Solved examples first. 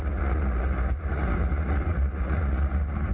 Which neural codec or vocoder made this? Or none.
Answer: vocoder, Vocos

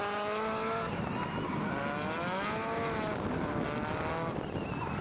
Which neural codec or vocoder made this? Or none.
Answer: none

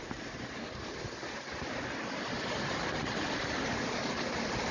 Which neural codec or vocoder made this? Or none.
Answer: none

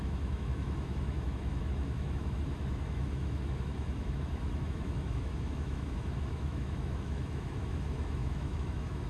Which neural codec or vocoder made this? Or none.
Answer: autoencoder, DAC-VAE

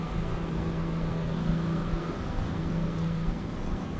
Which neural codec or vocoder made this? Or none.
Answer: codec, SNAC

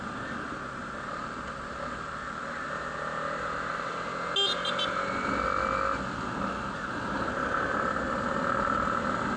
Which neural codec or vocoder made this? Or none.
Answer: none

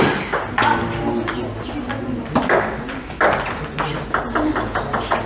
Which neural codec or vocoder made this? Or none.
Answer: none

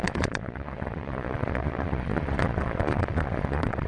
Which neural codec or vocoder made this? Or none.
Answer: vocoder, Vocos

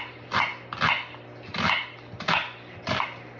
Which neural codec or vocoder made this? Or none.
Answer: none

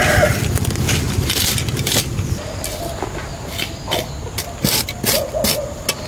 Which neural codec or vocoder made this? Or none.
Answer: none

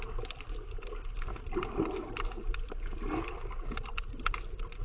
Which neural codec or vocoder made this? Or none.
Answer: none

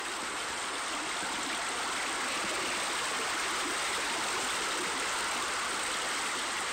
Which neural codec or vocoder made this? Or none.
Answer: none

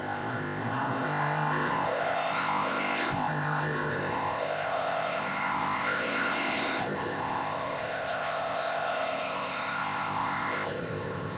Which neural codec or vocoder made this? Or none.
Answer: codec, ZipCodec